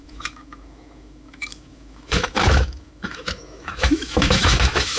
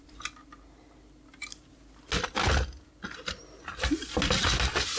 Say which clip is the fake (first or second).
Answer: first